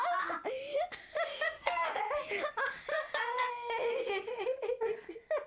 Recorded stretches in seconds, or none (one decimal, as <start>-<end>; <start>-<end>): 0.0-1.3; 2.0-2.9; 3.5-5.5